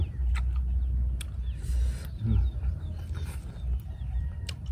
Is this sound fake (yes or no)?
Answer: no